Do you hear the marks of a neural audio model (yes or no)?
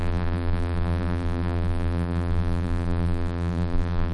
yes